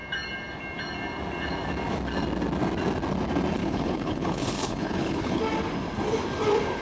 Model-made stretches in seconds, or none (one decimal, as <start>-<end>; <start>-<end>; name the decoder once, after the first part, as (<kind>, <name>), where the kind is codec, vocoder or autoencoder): 3.6-5.4 (codec, HILCodec)